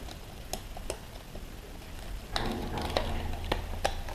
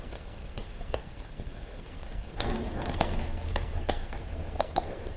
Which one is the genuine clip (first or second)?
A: first